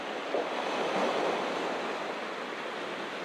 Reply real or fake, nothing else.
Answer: real